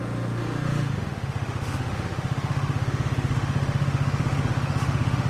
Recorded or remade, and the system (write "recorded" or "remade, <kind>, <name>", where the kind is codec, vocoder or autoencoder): remade, autoencoder, DAC-VAE